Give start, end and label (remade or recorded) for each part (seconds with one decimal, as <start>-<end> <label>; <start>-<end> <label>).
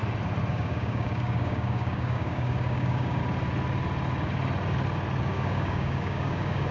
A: 0.0-0.5 recorded; 0.5-3.2 remade; 3.2-5.2 recorded; 5.2-6.7 remade